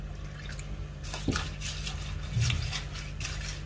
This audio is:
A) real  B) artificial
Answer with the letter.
A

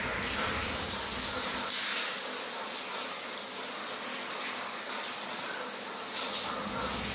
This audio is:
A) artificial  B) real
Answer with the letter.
B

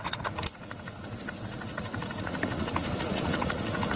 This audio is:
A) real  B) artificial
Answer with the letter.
B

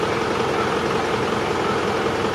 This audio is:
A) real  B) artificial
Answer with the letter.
A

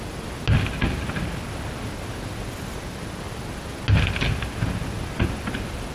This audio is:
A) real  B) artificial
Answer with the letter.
A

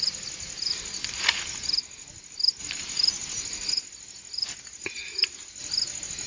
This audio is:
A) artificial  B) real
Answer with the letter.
B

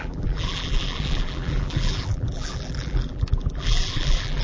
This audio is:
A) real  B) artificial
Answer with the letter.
B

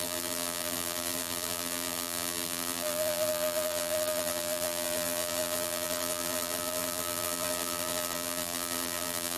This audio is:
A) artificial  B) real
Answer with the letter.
A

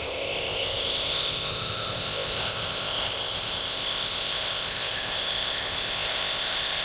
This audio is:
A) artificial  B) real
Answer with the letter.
A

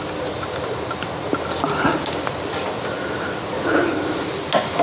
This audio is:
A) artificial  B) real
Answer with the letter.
B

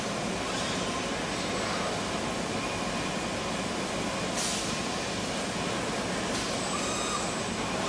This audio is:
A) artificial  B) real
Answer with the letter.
B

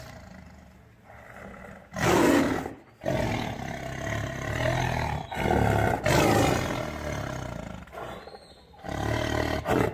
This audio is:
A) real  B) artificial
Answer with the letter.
A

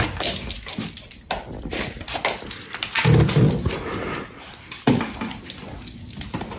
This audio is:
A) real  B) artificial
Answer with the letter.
A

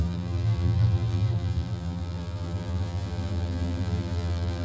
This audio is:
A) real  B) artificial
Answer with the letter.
B